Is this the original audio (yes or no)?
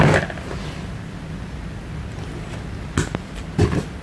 yes